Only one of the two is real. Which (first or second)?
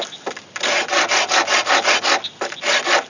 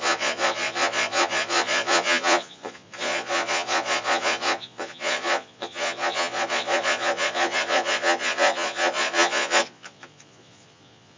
first